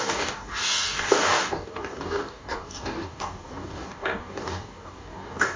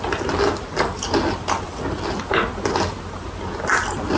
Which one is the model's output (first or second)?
first